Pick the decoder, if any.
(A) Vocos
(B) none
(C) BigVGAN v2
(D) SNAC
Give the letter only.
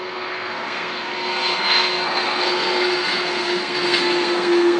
D